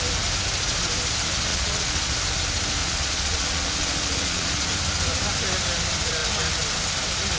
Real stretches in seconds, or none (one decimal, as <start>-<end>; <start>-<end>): 0.0-1.5; 2.1-2.8; 4.7-7.4